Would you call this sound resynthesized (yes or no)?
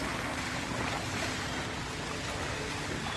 no